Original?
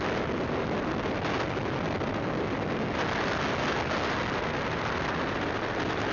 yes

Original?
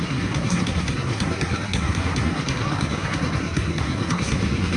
no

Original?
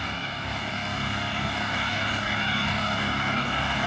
no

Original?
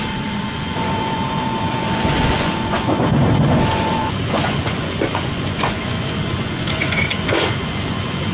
no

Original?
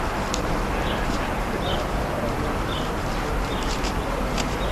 yes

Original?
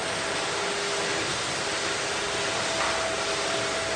yes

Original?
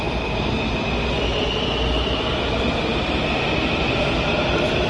yes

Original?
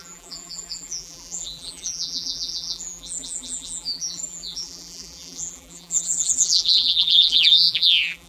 no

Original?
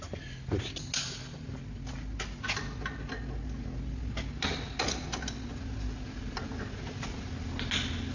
yes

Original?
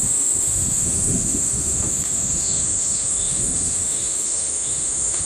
no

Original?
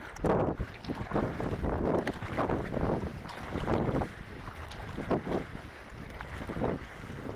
yes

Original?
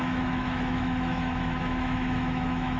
no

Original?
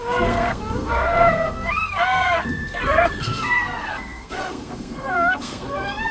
no